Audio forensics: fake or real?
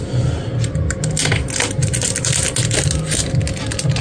real